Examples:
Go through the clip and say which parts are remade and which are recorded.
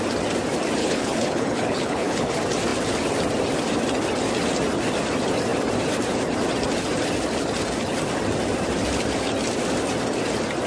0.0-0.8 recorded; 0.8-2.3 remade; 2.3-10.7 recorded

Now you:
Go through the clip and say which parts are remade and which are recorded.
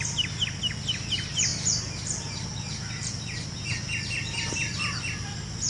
0.0-5.7 recorded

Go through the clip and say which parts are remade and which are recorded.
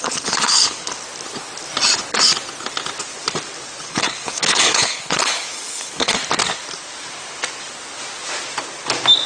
0.0-0.9 remade; 0.9-3.8 recorded; 3.8-6.2 remade; 6.2-9.3 recorded